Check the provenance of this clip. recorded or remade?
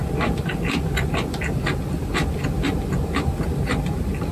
recorded